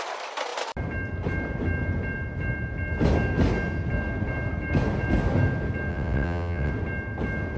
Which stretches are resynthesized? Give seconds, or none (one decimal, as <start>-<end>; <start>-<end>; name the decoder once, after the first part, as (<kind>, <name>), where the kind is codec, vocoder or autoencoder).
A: 5.9-6.7 (vocoder, WaveNeXt)